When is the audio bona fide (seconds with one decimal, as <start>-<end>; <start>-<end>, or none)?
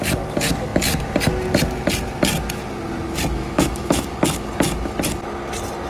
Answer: 0.0-3.4; 4.1-5.9